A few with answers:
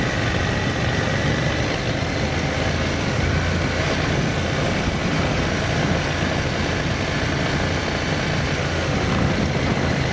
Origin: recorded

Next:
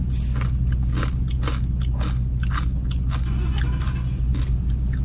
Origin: recorded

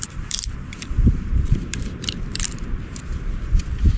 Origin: remade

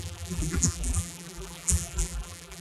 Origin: remade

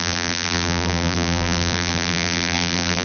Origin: remade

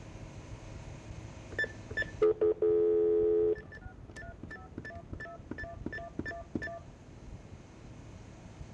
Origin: recorded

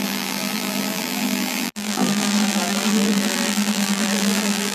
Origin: remade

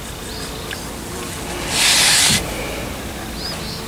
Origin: recorded